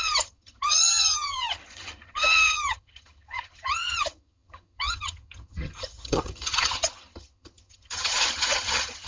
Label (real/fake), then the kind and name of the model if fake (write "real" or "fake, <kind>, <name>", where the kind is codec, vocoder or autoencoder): fake, vocoder, HiFi-GAN